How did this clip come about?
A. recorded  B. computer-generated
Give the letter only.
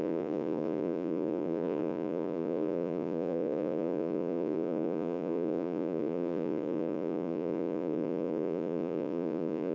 B